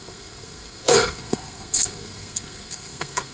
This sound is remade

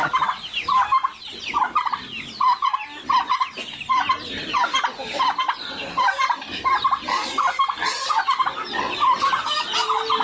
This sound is remade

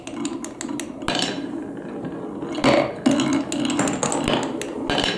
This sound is recorded